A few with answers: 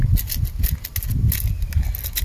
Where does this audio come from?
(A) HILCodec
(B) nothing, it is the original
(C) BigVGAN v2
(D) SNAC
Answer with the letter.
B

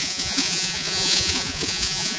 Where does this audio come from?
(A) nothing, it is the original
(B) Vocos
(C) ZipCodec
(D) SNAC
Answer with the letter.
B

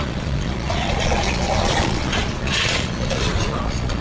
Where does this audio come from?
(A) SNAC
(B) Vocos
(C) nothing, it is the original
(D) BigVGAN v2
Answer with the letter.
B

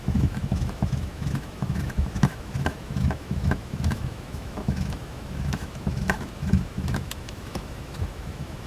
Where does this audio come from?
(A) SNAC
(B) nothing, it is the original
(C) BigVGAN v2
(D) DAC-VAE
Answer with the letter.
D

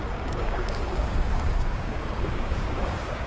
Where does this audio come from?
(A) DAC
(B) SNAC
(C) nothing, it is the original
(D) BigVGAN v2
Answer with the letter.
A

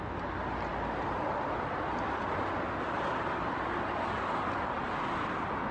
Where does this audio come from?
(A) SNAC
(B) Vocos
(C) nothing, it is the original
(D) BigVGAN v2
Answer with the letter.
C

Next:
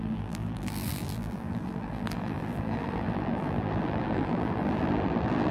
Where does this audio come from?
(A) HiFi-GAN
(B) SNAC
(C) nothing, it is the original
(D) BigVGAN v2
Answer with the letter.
D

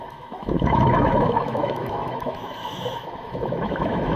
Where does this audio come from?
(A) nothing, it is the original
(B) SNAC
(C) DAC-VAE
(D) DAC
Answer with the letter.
C